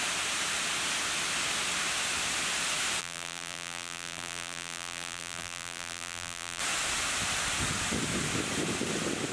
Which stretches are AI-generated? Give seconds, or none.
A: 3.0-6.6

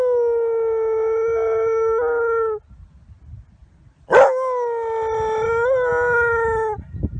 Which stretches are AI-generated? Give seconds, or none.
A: none

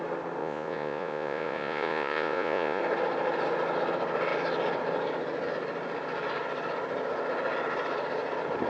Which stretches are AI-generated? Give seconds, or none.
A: 0.4-2.8

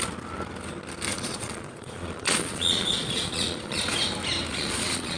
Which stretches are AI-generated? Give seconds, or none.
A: 1.1-3.8; 4.5-5.2

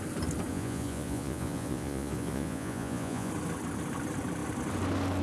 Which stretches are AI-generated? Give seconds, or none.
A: 0.5-3.3

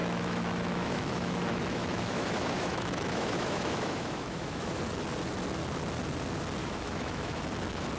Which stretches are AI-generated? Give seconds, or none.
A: 0.0-4.8; 6.6-7.4